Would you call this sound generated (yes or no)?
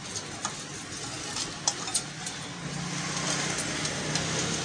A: no